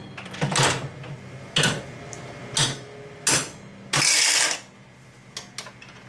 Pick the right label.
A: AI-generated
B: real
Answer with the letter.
B